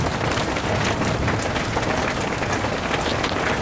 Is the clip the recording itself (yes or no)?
yes